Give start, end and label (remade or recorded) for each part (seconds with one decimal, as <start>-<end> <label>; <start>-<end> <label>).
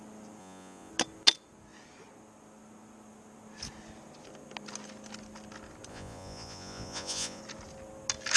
0.0-0.4 recorded; 0.4-0.9 remade; 0.9-5.9 recorded; 5.9-7.4 remade; 7.4-8.4 recorded